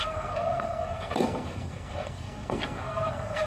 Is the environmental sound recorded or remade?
remade